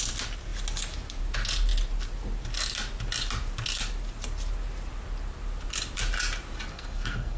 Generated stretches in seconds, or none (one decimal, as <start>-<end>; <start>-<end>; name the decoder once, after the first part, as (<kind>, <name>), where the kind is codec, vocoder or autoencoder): 6.7-7.4 (codec, SNAC)